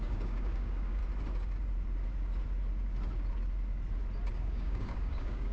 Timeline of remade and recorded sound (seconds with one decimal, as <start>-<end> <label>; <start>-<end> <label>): 0.0-1.0 remade; 1.0-4.3 recorded; 4.3-5.5 remade

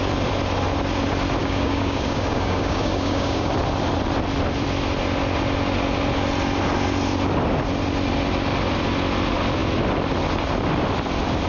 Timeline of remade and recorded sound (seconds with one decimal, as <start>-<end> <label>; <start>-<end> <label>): 0.0-1.4 recorded; 1.4-3.5 remade; 3.5-11.5 recorded

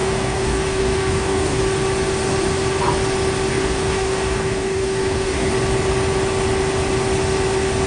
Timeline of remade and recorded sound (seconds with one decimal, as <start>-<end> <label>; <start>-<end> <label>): 0.0-1.6 remade; 1.6-3.5 recorded; 3.5-5.5 remade; 5.5-7.9 recorded

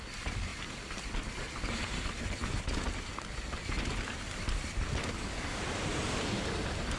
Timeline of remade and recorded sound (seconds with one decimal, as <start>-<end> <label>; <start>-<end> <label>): 0.0-5.0 recorded; 5.0-5.6 remade; 5.6-7.0 recorded